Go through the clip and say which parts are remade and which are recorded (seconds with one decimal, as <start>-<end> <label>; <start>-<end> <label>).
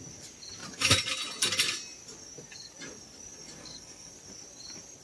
0.0-3.6 recorded; 3.6-4.1 remade; 4.1-5.0 recorded